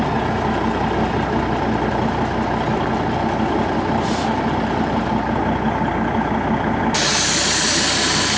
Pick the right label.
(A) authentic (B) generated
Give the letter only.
A